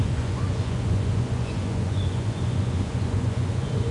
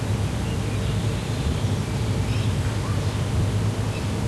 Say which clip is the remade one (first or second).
first